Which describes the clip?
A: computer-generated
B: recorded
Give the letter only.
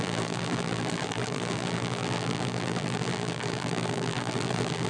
A